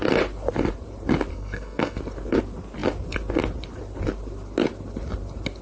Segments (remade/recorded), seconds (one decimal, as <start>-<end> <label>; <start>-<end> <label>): 0.0-1.3 recorded; 1.3-2.0 remade; 2.0-5.6 recorded